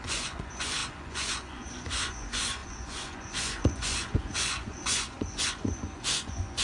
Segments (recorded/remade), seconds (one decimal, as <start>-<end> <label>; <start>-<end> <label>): 0.0-6.6 remade

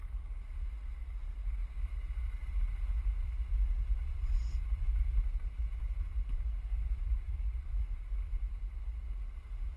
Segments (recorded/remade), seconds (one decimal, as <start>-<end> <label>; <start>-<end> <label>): 0.0-1.6 recorded; 1.6-2.9 remade; 2.9-3.7 recorded; 3.7-8.1 remade; 8.1-9.8 recorded

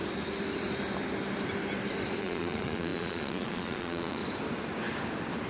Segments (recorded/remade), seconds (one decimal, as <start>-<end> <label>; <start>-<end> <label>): 0.0-2.2 recorded; 2.2-4.2 remade; 4.2-5.5 recorded